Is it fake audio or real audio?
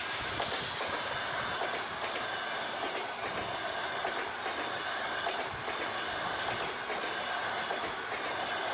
real